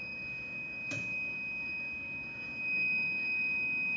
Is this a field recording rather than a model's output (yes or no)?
no